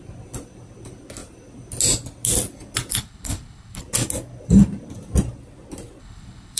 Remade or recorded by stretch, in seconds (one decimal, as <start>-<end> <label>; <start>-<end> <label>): 0.0-2.9 recorded; 2.9-3.8 remade; 3.8-6.0 recorded; 6.0-6.6 remade